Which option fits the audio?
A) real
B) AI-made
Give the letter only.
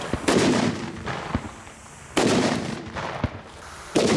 B